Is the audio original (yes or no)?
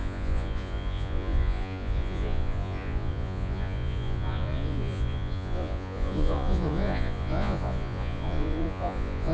no